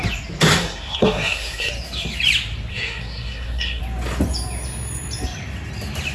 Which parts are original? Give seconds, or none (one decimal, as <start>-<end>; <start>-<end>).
0.0-0.6; 1.7-2.7; 3.8-6.1